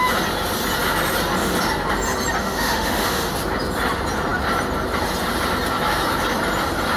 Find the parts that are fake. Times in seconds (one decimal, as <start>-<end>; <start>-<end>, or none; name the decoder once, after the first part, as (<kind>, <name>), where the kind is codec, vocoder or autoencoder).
2.4-3.3 (autoencoder, DAC-VAE)